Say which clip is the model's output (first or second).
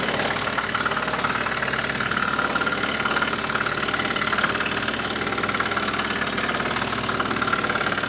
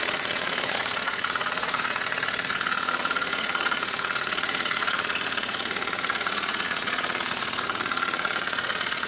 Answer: second